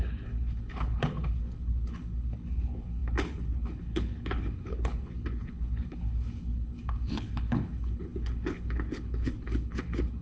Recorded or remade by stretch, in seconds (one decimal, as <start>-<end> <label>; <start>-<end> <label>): 0.0-10.2 remade